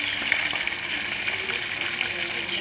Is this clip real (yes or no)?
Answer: yes